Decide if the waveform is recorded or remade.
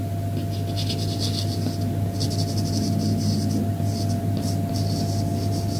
recorded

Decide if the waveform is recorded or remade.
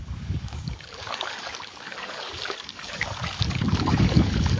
remade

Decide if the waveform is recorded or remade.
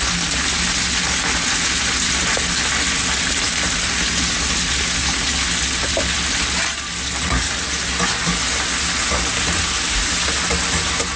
recorded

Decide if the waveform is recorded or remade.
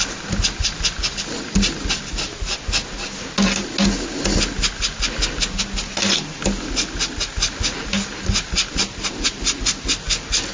recorded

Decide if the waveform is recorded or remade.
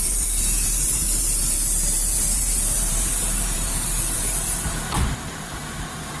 remade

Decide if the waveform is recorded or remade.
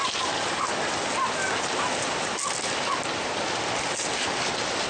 recorded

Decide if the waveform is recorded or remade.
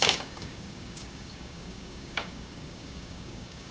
remade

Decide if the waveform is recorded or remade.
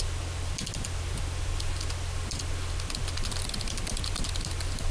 recorded